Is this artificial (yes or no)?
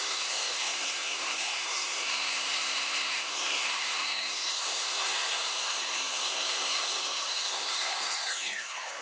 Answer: yes